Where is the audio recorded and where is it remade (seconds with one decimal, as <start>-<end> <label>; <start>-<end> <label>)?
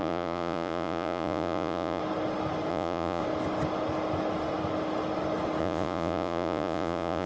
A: 0.0-2.0 remade; 2.0-2.7 recorded; 2.7-3.2 remade; 3.2-5.6 recorded; 5.6-7.3 remade